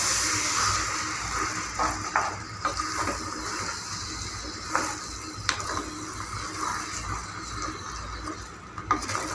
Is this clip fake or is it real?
real